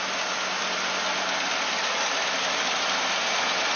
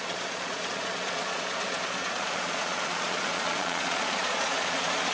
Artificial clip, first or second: second